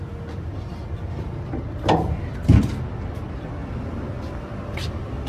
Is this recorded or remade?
recorded